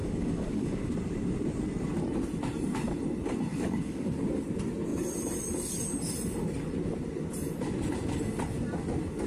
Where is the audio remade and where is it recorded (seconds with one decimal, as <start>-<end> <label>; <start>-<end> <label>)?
0.0-0.9 remade; 0.9-3.5 recorded; 3.5-4.1 remade; 4.1-9.3 recorded